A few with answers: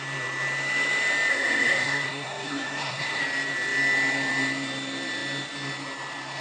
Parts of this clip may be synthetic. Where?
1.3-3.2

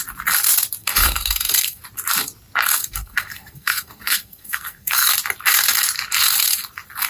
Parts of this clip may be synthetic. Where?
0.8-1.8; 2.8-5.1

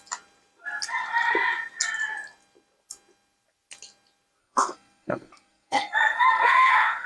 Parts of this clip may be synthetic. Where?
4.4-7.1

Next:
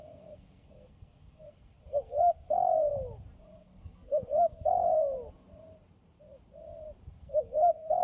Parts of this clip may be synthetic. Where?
0.0-2.9; 3.6-5.0; 7.1-8.0

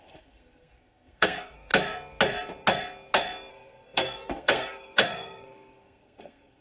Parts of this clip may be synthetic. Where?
0.0-1.7; 3.5-6.6